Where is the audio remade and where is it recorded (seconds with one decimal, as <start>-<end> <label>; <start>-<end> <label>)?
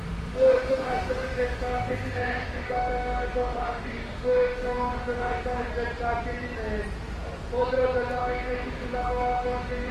0.0-5.7 remade; 5.7-8.2 recorded; 8.2-9.9 remade